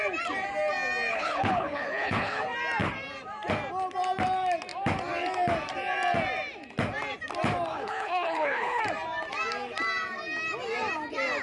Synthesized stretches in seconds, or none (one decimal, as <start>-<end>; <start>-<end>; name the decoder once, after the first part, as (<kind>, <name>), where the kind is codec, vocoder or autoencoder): 1.1-2.4 (codec, HILCodec); 7.7-8.8